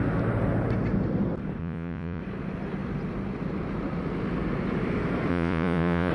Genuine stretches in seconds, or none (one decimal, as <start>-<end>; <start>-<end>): 0.0-1.6; 2.2-5.3